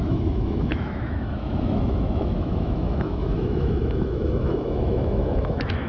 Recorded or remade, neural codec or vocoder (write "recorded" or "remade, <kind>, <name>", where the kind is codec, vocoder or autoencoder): remade, autoencoder, DAC-VAE